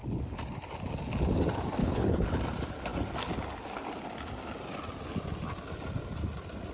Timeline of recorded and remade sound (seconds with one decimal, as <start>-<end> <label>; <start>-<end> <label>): 0.0-1.8 recorded; 1.8-2.4 remade; 2.4-6.7 recorded